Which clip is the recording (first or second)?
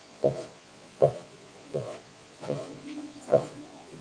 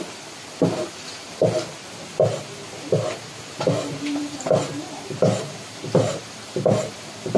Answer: second